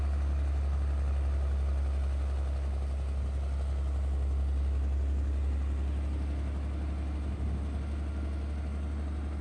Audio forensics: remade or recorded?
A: recorded